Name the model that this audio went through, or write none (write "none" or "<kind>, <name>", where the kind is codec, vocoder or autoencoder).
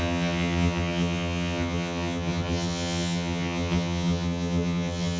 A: vocoder, HiFi-GAN